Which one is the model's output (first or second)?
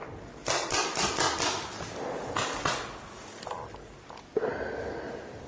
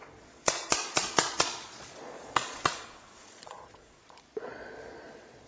second